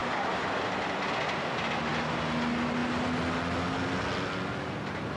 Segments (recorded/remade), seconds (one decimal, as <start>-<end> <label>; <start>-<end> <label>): 0.0-5.2 recorded